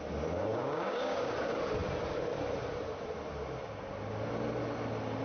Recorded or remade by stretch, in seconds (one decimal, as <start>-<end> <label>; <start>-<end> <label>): 0.0-0.5 recorded; 0.5-1.3 remade; 1.3-5.2 recorded